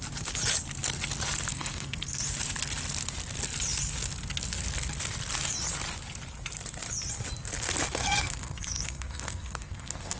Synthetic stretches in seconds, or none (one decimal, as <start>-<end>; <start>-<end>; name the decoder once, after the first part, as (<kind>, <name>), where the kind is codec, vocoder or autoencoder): 1.5-2.2 (codec, SNAC); 8.0-10.2